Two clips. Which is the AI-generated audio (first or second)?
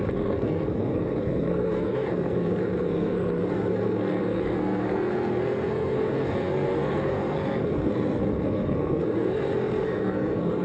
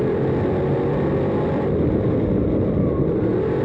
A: first